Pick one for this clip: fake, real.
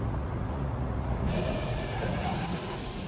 fake